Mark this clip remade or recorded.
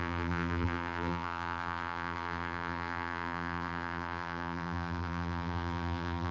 remade